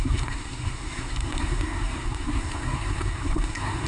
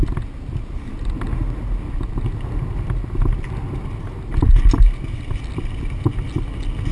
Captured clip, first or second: second